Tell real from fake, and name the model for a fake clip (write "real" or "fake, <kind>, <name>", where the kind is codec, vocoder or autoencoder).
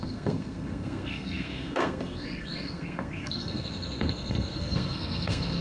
fake, codec, SNAC